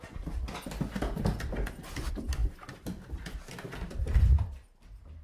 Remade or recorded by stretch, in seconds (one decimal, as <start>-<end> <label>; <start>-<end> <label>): 0.0-5.2 recorded